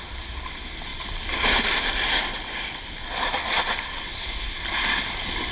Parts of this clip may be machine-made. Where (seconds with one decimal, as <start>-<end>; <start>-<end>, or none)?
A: 0.9-4.2